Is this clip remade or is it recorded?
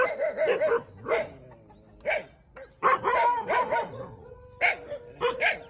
recorded